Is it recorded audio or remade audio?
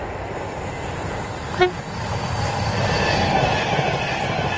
recorded